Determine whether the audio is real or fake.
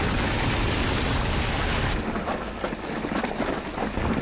real